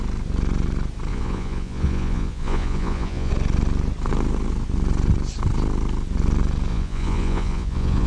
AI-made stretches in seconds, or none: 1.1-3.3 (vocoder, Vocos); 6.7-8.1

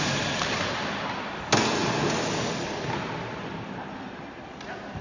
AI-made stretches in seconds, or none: none

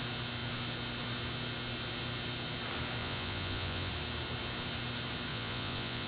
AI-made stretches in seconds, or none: 3.0-3.9 (vocoder, Vocos); 5.3-6.1

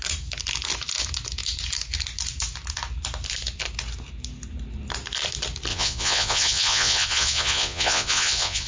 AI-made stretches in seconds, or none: 5.7-8.7 (vocoder, Vocos)

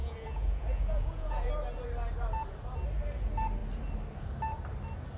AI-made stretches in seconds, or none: 0.0-1.5 (vocoder, Vocos)

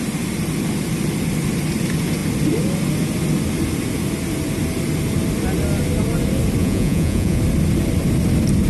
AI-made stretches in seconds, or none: 6.6-7.4 (vocoder, Vocos)

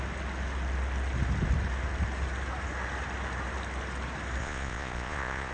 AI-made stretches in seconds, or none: 4.4-5.5 (vocoder, Vocos)

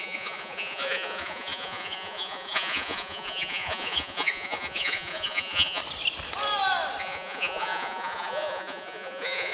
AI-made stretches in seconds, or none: 0.0-5.8 (vocoder, Vocos); 7.0-9.5